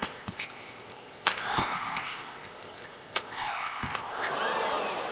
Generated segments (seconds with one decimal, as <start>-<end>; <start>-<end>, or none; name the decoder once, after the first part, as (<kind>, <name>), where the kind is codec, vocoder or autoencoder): 0.0-4.3 (codec, ZipCodec)

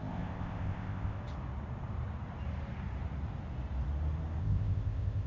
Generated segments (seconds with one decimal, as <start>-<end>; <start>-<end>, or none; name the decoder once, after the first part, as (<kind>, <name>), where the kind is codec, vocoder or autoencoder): 0.0-1.2 (codec, ZipCodec); 4.4-5.3

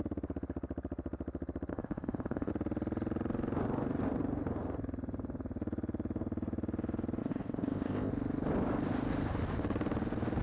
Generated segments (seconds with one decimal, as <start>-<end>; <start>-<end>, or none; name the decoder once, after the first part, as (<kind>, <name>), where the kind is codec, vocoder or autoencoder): 1.7-2.5 (codec, ZipCodec); 7.2-8.1

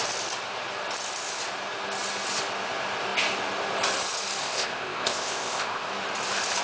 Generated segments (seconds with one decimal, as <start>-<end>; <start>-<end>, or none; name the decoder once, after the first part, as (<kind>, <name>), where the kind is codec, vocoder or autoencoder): 4.4-5.9 (codec, ZipCodec)

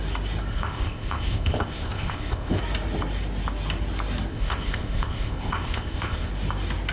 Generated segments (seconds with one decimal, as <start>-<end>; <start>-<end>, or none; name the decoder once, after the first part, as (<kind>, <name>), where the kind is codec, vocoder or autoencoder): 0.5-2.6 (codec, ZipCodec); 4.3-6.3